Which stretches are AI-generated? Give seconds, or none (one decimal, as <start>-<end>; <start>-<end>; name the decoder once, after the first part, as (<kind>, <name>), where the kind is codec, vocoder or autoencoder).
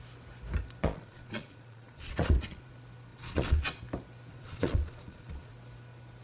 0.8-2.7 (vocoder, Vocos); 3.1-3.8; 4.3-5.5